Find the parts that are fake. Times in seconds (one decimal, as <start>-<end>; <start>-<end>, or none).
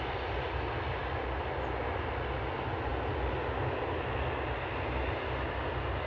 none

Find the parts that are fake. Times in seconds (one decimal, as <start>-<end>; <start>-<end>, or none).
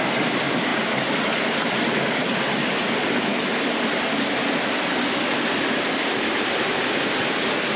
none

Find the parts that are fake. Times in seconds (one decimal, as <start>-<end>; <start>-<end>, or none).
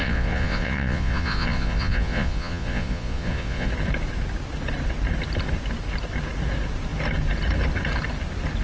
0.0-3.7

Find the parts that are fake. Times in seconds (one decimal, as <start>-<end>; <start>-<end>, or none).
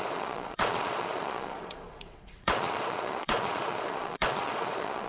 0.0-5.1